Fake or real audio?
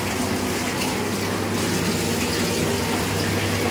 real